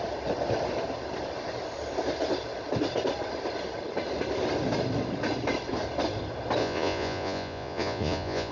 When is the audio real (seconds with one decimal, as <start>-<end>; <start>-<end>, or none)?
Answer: 0.0-6.6